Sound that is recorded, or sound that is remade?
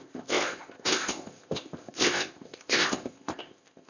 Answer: remade